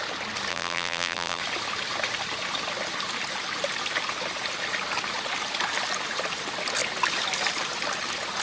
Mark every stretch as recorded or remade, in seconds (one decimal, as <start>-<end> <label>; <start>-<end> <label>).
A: 0.0-0.5 recorded; 0.5-1.4 remade; 1.4-8.4 recorded